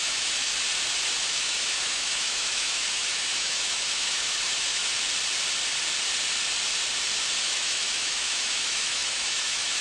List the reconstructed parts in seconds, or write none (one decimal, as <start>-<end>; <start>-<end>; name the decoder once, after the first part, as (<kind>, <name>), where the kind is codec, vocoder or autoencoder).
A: 0.0-0.5 (autoencoder, DAC-VAE); 1.2-4.9; 7.4-9.8